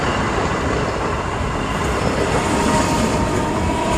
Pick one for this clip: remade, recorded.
recorded